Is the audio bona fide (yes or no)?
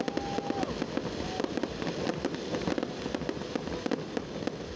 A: yes